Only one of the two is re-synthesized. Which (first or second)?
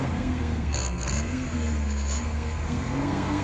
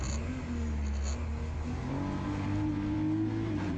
first